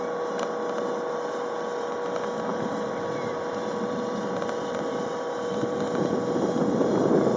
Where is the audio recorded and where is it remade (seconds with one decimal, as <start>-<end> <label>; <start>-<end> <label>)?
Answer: 0.0-2.5 recorded; 2.5-6.9 remade; 6.9-7.4 recorded